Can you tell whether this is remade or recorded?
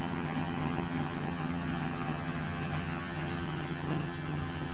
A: remade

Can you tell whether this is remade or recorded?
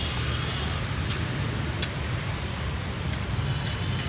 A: recorded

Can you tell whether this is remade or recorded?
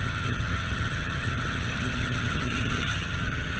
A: remade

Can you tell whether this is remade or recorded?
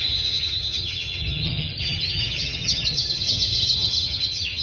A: remade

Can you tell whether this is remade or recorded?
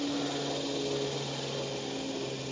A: recorded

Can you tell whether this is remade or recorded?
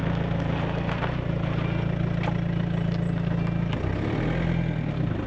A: recorded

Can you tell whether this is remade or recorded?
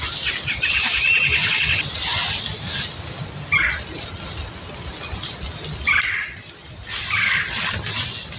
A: recorded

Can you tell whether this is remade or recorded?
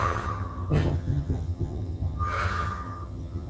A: remade